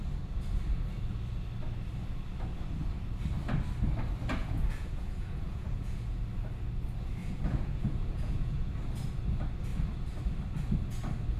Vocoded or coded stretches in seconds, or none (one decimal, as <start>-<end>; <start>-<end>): 4.4-6.2; 7.2-8.7